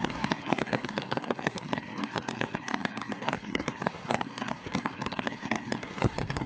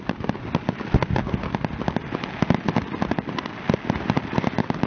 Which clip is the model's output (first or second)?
first